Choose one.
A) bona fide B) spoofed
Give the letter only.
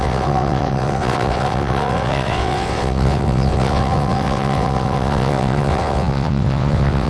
B